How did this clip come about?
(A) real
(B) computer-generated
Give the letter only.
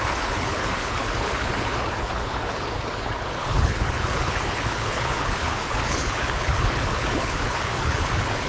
B